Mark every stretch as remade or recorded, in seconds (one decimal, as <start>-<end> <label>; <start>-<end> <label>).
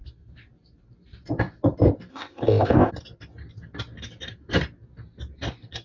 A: 0.0-2.1 recorded; 2.1-2.9 remade; 2.9-5.8 recorded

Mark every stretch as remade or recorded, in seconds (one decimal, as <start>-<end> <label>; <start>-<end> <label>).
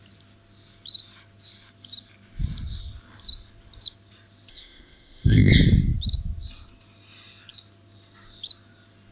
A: 0.0-4.5 recorded; 4.5-5.5 remade; 5.5-9.1 recorded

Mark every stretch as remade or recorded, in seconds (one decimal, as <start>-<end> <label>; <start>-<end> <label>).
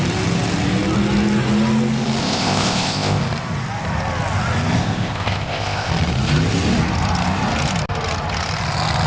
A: 0.0-2.2 recorded; 2.2-3.2 remade; 3.2-4.8 recorded; 4.8-5.9 remade; 5.9-9.1 recorded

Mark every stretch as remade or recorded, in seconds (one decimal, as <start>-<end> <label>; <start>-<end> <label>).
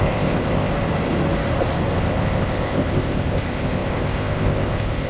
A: 0.0-0.7 remade; 0.7-2.0 recorded; 2.0-5.1 remade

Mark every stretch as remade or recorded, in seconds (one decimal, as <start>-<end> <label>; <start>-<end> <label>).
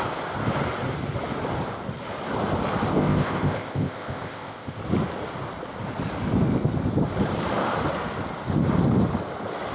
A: 0.0-2.9 recorded; 2.9-4.8 remade; 4.8-9.7 recorded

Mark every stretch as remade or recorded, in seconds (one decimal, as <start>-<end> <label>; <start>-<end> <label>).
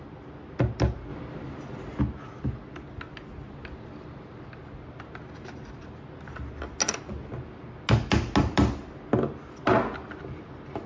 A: 0.0-10.9 recorded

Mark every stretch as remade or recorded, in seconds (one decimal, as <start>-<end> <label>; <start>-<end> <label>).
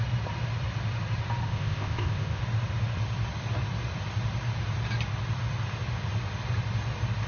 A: 0.0-1.4 recorded; 1.4-2.4 remade; 2.4-7.3 recorded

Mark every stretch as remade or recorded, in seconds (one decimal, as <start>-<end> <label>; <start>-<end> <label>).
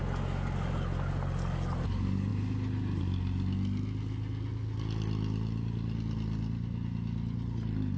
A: 0.0-8.0 recorded